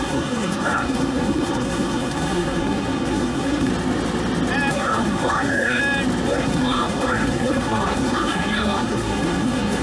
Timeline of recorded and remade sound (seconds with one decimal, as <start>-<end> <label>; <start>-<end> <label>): 0.0-3.7 remade; 3.7-4.7 recorded; 4.7-5.8 remade; 5.8-6.3 recorded; 6.3-9.8 remade